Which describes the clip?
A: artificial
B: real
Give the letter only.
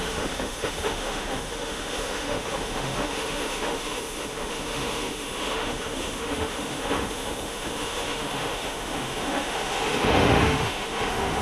A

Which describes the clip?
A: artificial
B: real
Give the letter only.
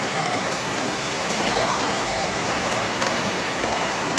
A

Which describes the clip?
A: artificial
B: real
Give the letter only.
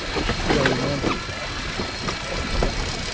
B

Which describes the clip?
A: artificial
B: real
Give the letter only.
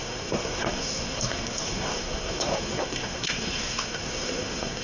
A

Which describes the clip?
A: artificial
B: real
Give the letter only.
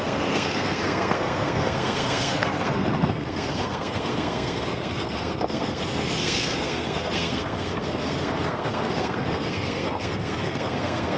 A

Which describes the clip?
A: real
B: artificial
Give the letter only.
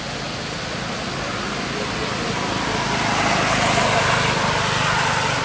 A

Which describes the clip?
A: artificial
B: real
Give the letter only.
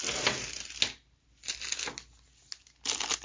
B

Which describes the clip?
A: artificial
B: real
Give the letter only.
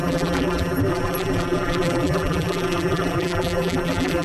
A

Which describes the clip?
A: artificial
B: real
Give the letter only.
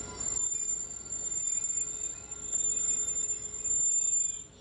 B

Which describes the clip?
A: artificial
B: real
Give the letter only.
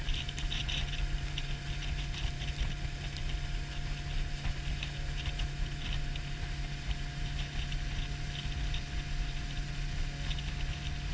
B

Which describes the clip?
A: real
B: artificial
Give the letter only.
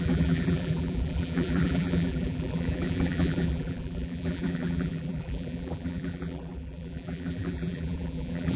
B